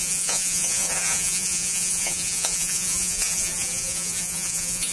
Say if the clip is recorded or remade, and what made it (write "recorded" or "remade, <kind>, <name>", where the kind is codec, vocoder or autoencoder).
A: remade, vocoder, Vocos